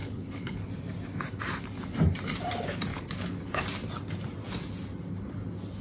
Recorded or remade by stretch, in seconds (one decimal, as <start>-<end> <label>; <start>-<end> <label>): 0.0-0.7 remade; 0.7-2.9 recorded; 2.9-3.6 remade; 3.6-5.8 recorded